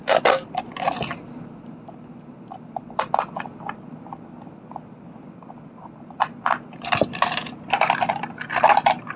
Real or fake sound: real